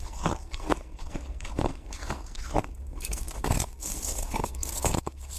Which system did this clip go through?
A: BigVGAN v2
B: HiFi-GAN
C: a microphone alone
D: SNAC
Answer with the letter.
D